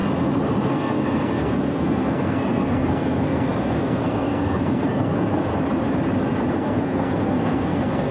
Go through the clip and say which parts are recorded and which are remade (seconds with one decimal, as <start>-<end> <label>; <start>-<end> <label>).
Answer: 0.0-0.7 recorded; 0.7-5.5 remade; 5.5-6.5 recorded; 6.5-8.1 remade